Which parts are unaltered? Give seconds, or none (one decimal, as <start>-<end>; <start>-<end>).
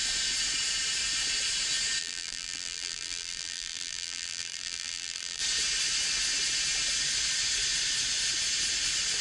0.0-2.0; 5.4-9.2